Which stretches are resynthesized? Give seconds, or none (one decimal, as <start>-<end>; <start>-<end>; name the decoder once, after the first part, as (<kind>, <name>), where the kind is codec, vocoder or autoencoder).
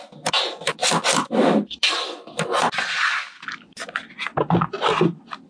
0.8-4.1 (vocoder, BigVGAN v2)